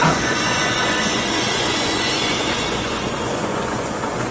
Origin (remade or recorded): remade